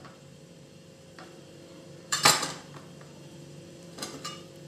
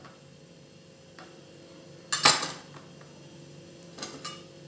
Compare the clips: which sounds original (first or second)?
second